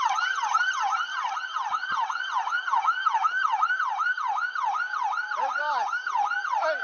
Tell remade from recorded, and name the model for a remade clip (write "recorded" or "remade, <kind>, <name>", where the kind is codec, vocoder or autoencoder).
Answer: recorded